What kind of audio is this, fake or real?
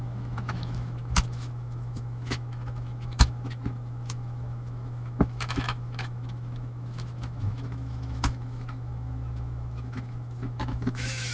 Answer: fake